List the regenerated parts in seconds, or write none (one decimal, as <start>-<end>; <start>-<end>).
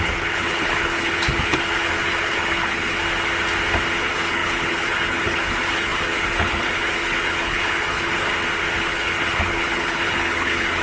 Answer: 0.0-3.0; 4.0-8.3; 8.8-10.8